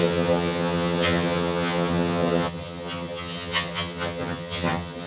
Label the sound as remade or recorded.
remade